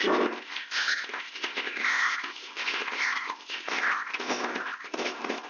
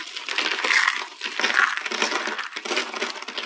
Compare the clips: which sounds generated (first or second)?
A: first